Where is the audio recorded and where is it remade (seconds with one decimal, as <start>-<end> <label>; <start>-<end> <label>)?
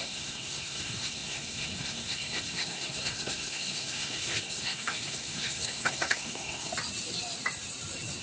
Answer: 0.0-6.7 remade; 6.7-8.2 recorded